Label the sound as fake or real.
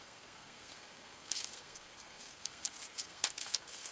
fake